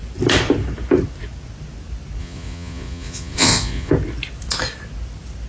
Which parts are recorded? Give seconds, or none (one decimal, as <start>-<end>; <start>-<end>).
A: 0.0-2.2; 3.9-5.5